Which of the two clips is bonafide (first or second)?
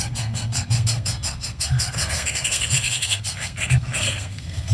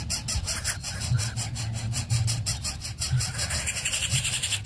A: second